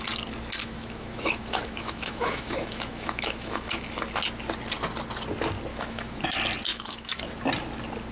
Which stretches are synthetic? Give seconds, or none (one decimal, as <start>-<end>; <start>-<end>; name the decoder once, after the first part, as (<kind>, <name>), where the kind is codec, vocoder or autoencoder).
0.6-3.8 (autoencoder, DAC-VAE); 5.7-6.2; 6.7-7.2